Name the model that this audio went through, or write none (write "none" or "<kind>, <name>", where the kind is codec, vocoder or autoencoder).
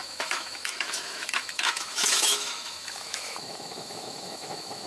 autoencoder, DAC-VAE